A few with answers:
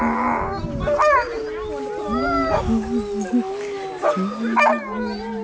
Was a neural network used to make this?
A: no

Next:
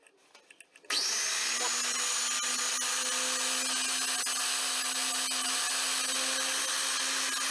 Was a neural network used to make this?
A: no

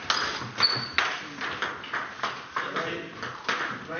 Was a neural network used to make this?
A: no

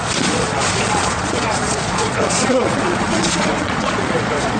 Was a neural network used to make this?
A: yes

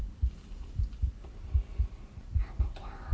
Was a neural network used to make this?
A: no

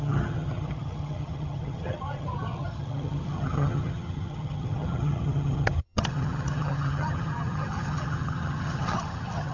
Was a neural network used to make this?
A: yes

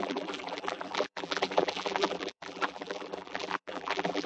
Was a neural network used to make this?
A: yes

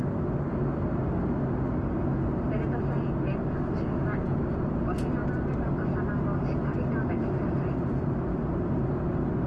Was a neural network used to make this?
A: no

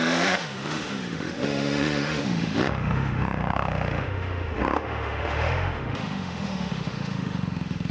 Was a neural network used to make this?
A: yes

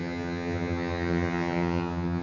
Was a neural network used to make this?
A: yes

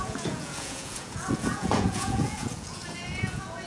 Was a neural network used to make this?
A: yes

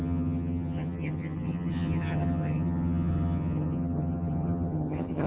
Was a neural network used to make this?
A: yes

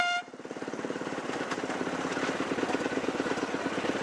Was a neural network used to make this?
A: no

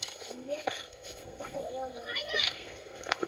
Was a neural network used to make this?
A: yes